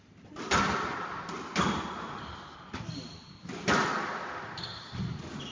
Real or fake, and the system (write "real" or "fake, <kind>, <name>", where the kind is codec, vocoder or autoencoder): real